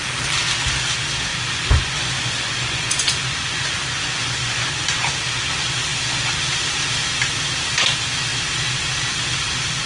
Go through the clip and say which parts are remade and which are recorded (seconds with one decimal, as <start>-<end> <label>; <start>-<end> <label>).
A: 0.0-1.3 recorded; 1.3-4.7 remade; 4.7-9.9 recorded